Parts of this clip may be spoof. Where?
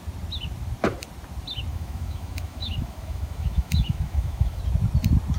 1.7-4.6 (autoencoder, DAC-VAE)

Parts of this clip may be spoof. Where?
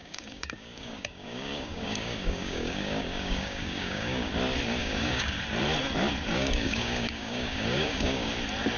0.0-4.3 (codec, DAC); 4.8-5.4; 6.3-8.3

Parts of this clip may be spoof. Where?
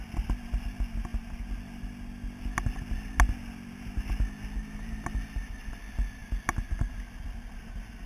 none